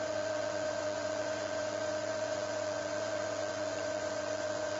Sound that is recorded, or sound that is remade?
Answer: remade